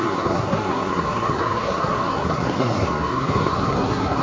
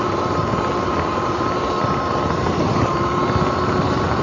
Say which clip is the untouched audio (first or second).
second